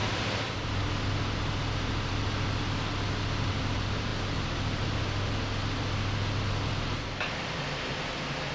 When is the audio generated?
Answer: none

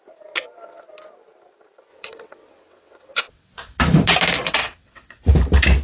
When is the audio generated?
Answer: 1.9-3.8 (vocoder, WaveNeXt); 4.4-5.3

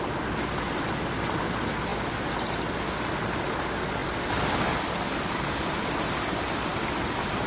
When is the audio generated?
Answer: none

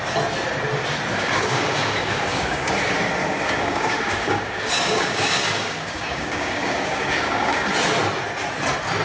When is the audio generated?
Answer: 1.1-2.7 (codec, DAC); 3.2-7.7

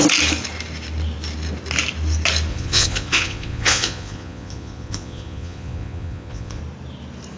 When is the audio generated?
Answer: 2.5-6.6 (vocoder, Vocos)

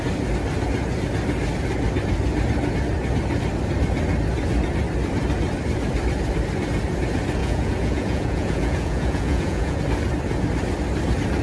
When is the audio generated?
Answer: 7.4-9.8 (vocoder, Vocos)

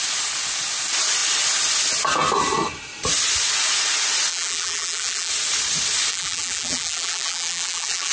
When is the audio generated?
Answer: 4.3-5.3 (vocoder, BigVGAN v2); 6.1-8.1

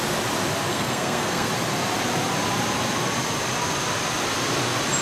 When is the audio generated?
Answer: 0.7-1.5 (codec, SNAC)